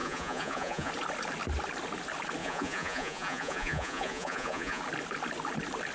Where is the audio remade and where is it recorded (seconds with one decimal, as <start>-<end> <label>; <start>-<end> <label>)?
0.0-0.9 remade; 0.9-2.4 recorded; 2.4-4.8 remade; 4.8-5.9 recorded